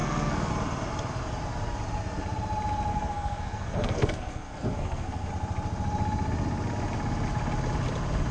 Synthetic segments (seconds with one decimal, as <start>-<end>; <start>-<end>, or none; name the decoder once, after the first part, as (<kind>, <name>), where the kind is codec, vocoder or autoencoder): 0.0-0.5 (codec, SNAC); 2.9-5.3